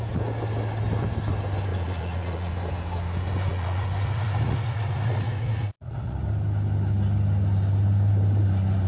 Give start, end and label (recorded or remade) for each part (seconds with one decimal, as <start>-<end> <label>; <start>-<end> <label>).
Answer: 0.0-1.7 recorded; 1.7-2.5 remade; 2.5-3.5 recorded; 3.5-6.2 remade; 6.2-8.9 recorded